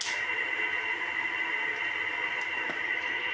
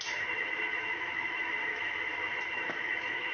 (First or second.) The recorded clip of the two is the first